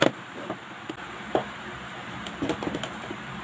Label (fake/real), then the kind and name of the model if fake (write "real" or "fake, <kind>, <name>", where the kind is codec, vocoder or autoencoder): real